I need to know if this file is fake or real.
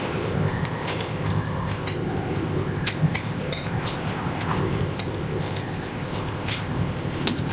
fake